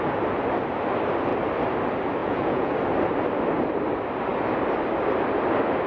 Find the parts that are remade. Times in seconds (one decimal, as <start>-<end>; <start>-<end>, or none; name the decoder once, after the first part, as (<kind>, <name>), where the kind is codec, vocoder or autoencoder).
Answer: 2.2-2.7 (vocoder, Vocos)